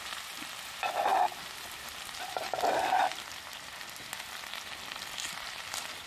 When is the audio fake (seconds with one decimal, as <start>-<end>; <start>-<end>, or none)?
none